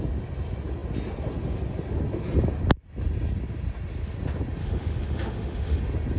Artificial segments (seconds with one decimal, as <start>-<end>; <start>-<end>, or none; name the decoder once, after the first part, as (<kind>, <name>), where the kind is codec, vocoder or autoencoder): 4.6-5.8 (autoencoder, DAC-VAE)